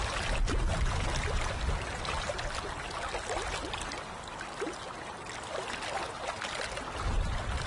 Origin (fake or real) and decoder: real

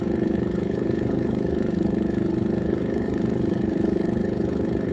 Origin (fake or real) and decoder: fake, codec, HILCodec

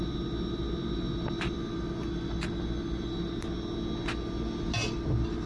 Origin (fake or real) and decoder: real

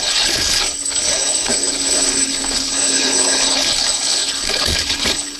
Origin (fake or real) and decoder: fake, codec, HILCodec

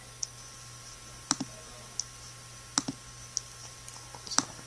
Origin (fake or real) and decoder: real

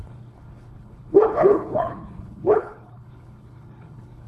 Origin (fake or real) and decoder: fake, codec, HILCodec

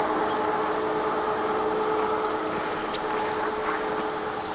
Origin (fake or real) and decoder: real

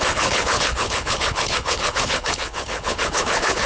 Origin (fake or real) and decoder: fake, codec, HILCodec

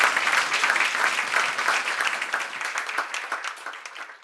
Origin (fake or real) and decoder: real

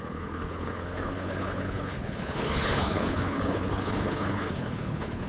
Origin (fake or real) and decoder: fake, codec, HILCodec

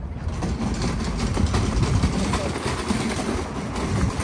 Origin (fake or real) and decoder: real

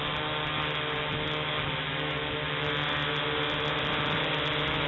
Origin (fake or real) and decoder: real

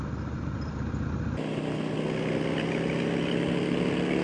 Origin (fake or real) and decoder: real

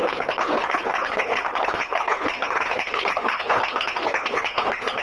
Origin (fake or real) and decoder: fake, codec, HILCodec